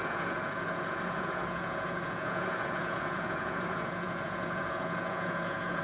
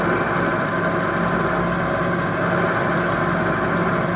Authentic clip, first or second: second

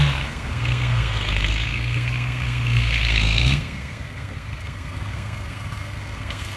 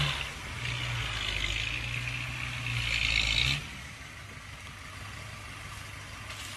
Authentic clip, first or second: second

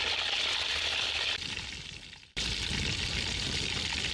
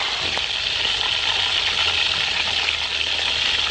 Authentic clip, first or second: second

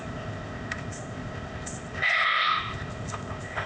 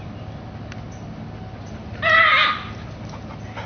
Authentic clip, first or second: second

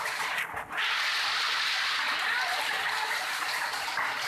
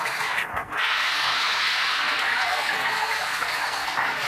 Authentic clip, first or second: first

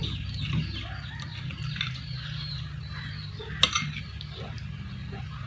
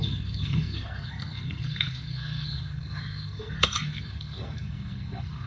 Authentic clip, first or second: first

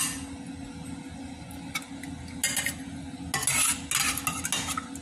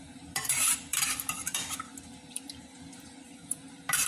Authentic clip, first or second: first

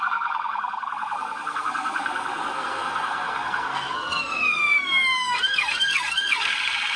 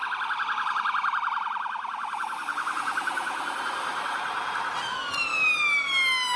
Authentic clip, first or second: second